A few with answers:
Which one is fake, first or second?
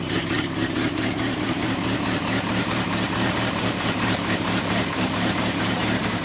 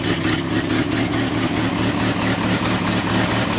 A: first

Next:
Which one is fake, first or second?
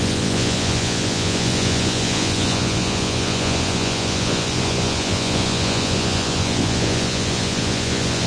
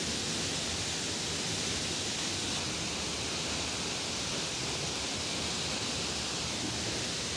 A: first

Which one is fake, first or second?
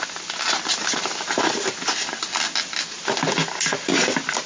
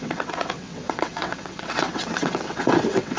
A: second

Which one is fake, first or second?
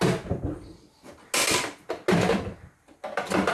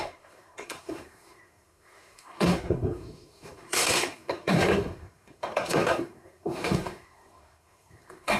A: second